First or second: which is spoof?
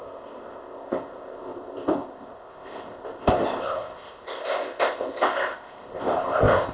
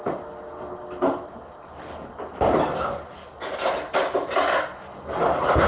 first